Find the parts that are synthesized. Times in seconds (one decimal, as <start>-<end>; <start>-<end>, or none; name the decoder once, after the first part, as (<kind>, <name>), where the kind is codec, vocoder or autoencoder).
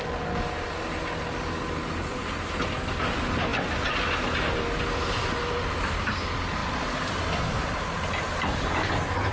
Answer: 6.6-7.2 (vocoder, BigVGAN v2)